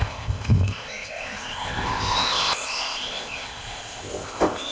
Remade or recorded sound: remade